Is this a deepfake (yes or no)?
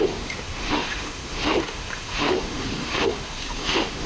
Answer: yes